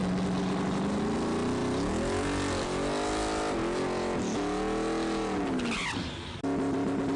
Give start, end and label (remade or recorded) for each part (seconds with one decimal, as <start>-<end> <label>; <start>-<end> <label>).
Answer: 0.0-7.2 recorded